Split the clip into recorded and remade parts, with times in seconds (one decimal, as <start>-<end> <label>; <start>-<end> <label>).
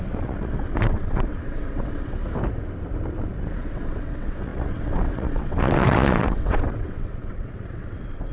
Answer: 0.0-2.2 remade; 2.2-3.7 recorded; 3.7-8.3 remade